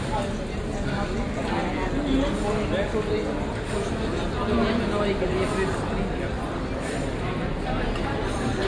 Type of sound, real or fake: real